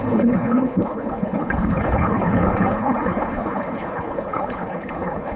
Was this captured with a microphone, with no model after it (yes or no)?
no